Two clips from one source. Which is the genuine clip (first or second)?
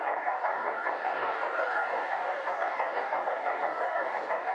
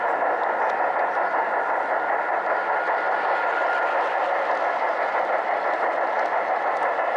second